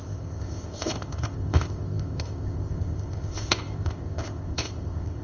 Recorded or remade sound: remade